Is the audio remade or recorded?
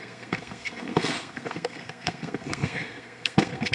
remade